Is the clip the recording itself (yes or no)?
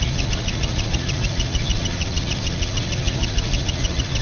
no